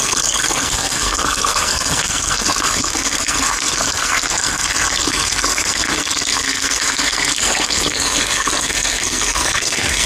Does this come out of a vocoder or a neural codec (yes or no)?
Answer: yes